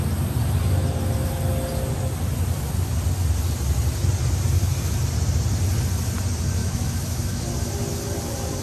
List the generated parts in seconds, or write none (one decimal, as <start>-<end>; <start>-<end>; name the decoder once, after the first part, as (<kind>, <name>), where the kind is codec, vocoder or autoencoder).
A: 6.6-7.4 (autoencoder, DAC-VAE)